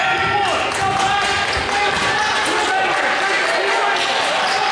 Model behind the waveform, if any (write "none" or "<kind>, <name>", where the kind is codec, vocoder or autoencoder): none